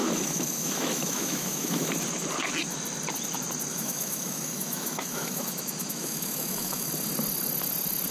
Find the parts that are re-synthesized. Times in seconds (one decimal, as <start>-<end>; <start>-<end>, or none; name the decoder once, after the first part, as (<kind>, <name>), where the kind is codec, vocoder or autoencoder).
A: 0.0-1.9 (autoencoder, DAC-VAE); 3.7-6.9